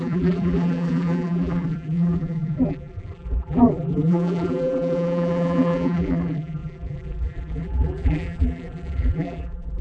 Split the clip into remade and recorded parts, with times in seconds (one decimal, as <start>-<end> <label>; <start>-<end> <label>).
0.0-9.8 remade